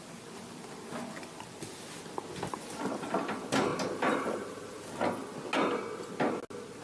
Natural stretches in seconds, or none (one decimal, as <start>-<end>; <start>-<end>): 0.0-6.8